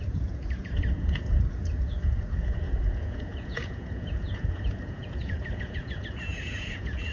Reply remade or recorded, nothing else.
remade